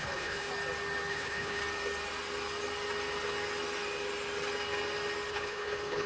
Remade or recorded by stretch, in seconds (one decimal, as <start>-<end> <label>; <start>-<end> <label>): 0.0-0.5 remade; 0.5-1.1 recorded; 1.1-1.6 remade; 1.6-5.3 recorded; 5.3-6.1 remade